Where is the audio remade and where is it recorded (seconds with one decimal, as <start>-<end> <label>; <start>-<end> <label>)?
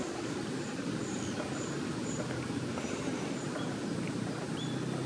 0.0-5.1 recorded